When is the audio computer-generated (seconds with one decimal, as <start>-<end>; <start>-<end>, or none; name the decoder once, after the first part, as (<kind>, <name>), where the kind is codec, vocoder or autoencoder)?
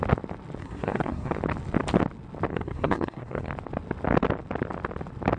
0.6-1.4 (codec, SNAC); 2.5-3.5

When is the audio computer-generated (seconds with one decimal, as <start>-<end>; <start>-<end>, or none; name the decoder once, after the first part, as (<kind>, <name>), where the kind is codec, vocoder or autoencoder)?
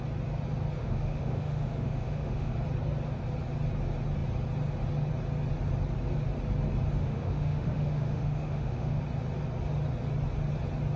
0.8-2.5 (autoencoder, DAC-VAE); 7.0-9.0